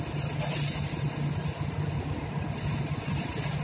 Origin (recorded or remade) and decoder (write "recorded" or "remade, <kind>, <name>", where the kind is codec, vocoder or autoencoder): recorded